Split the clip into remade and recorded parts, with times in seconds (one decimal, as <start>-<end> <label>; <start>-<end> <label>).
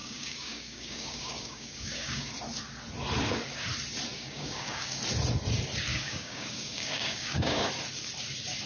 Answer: 0.0-2.3 remade; 2.3-4.1 recorded; 4.1-5.0 remade; 5.0-5.9 recorded; 5.9-7.7 remade; 7.7-8.7 recorded